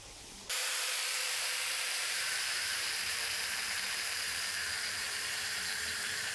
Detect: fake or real fake